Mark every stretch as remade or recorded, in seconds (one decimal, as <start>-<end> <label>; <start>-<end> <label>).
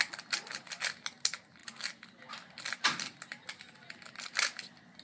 0.0-5.0 recorded